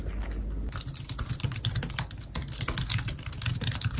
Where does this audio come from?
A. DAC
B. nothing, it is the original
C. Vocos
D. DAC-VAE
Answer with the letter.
B